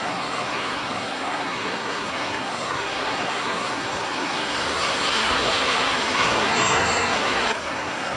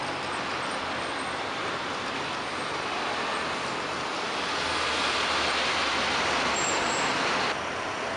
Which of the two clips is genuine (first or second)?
second